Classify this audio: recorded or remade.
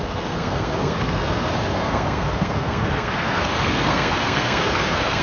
remade